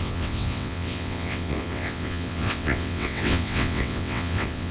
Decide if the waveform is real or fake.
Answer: fake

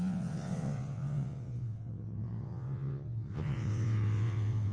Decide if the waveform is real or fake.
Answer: fake